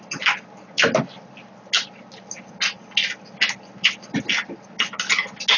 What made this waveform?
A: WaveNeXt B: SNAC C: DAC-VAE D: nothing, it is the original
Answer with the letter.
D